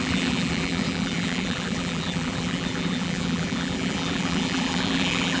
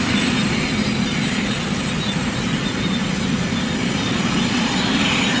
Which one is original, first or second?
second